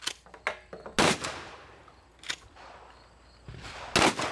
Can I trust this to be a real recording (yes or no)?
yes